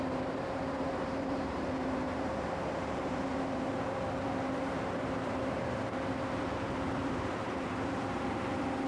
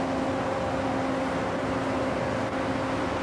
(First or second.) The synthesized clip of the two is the first